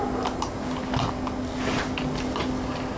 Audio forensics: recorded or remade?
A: recorded